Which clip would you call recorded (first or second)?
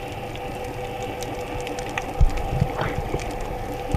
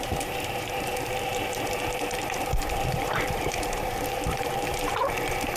first